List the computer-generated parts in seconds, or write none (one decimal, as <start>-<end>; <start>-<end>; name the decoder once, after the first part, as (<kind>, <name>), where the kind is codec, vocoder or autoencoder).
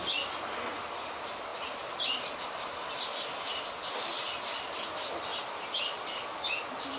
none